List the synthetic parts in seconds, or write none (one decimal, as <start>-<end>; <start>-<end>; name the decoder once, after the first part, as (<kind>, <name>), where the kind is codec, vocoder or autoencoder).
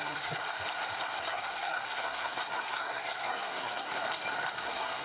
0.0-0.4 (codec, SNAC); 1.2-3.9; 4.5-5.0